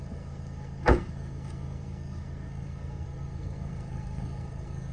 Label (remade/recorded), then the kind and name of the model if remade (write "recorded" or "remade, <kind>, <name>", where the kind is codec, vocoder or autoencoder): remade, codec, SNAC